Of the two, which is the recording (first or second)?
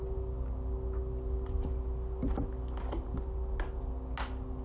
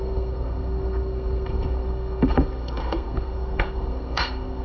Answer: first